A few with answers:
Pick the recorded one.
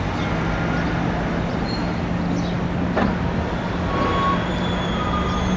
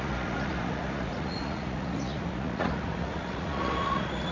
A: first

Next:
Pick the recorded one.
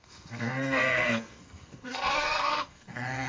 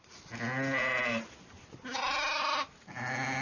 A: second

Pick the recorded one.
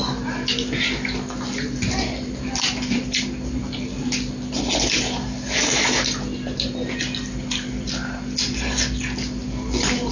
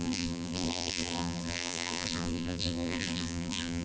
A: first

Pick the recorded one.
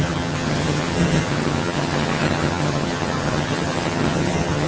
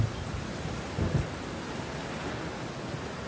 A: second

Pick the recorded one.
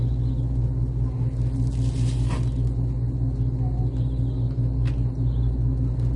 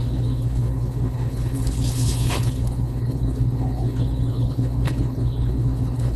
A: first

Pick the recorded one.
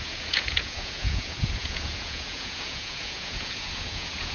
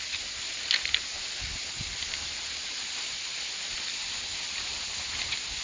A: second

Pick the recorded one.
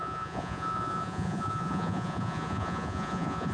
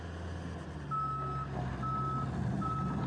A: second